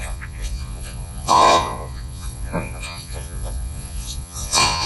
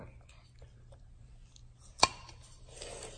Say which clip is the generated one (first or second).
first